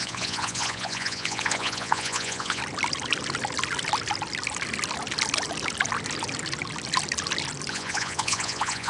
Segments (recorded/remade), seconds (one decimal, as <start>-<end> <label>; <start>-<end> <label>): 0.0-2.6 remade; 2.6-7.7 recorded; 7.7-8.9 remade